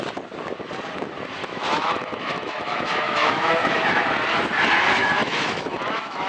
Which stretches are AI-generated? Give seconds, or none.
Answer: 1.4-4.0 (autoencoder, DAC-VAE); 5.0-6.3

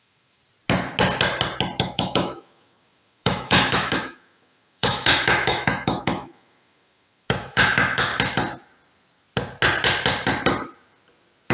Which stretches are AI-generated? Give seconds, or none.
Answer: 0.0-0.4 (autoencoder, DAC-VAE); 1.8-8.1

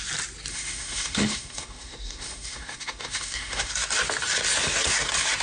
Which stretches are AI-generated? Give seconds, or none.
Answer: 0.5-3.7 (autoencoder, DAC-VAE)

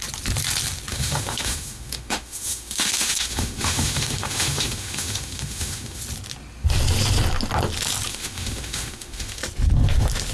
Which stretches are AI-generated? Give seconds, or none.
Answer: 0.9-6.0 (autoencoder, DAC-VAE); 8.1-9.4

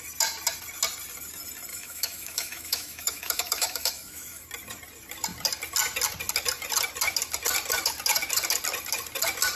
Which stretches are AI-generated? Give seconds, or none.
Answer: 1.7-4.5 (autoencoder, DAC-VAE)

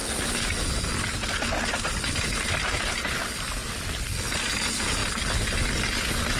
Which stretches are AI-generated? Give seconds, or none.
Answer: none

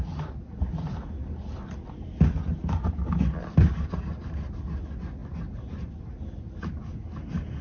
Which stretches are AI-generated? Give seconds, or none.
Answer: none

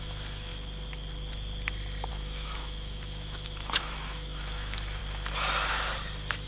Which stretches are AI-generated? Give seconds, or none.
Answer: 0.0-0.5 (autoencoder, DAC-VAE); 2.1-5.0